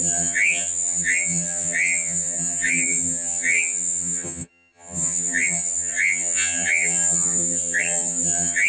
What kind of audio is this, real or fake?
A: fake